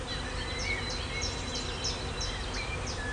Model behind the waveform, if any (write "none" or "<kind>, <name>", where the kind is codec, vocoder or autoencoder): none